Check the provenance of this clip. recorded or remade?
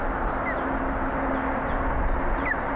recorded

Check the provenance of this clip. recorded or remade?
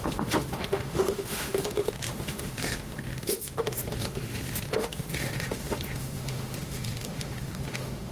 remade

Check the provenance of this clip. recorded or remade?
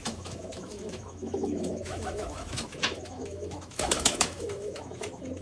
remade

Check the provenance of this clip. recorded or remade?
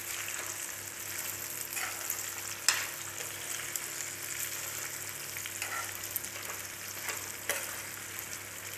recorded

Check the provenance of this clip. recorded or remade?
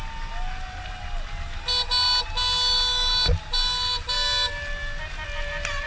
recorded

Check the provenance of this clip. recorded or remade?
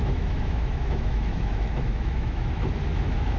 remade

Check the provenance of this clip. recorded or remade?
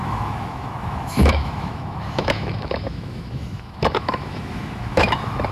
remade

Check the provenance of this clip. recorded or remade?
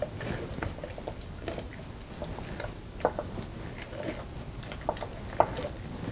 recorded